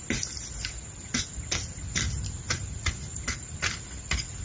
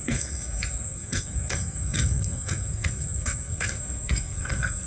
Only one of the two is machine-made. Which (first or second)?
second